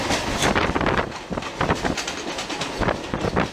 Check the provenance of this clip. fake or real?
real